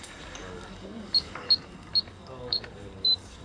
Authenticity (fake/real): fake